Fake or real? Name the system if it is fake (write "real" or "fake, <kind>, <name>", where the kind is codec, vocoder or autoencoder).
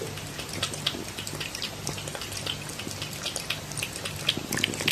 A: fake, vocoder, BigVGAN v2